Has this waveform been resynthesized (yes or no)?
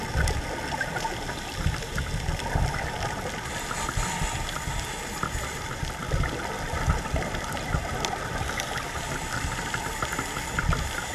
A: no